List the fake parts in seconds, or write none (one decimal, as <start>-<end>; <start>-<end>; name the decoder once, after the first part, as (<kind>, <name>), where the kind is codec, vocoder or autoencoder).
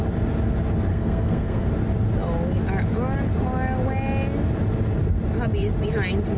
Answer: 0.9-1.7 (codec, SNAC)